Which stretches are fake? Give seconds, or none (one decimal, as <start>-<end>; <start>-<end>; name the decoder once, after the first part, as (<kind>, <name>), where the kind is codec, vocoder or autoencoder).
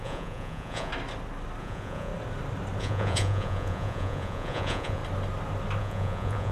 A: 0.0-0.9 (vocoder, Vocos); 1.6-2.1; 2.8-5.0; 5.8-6.5